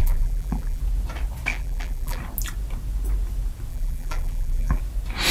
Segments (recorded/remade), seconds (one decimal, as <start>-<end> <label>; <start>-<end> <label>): 0.0-0.8 remade; 0.8-1.5 recorded; 1.5-2.2 remade; 2.2-3.7 recorded; 3.7-4.8 remade; 4.8-5.3 recorded

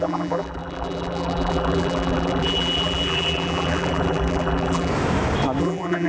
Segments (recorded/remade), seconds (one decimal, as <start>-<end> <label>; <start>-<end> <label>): 0.0-4.9 remade; 4.9-5.6 recorded; 5.6-6.1 remade

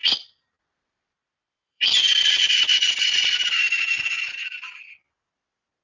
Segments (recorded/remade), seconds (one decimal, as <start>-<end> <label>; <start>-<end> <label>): 0.0-3.5 remade; 3.5-5.8 recorded

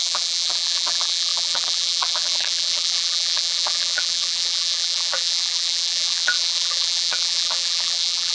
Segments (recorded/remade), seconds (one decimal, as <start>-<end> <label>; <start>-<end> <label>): 0.0-8.3 remade